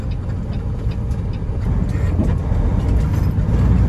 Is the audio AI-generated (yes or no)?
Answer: no